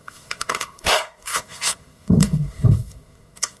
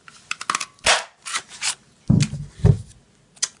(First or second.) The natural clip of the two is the second